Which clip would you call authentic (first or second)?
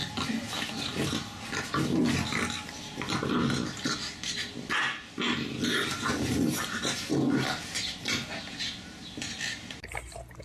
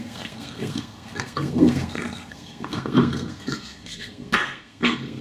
first